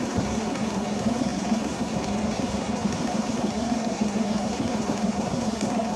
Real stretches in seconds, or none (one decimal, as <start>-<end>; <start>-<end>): none